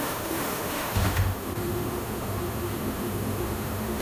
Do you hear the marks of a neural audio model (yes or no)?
yes